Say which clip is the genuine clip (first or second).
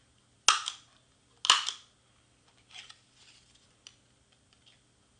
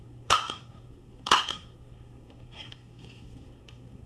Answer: first